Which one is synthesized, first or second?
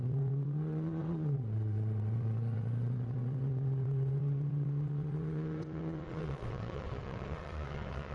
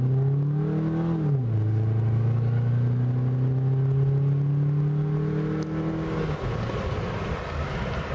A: first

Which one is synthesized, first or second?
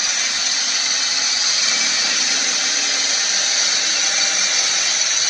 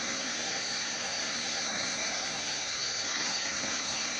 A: second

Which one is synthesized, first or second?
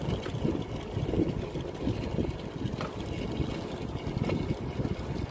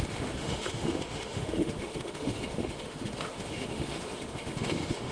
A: second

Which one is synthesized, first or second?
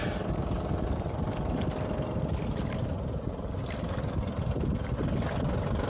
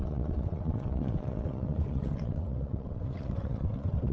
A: second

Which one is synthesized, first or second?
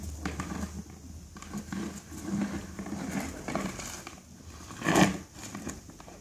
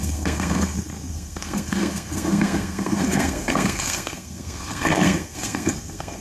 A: second